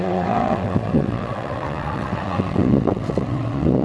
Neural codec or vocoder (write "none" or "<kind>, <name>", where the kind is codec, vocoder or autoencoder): vocoder, WaveNeXt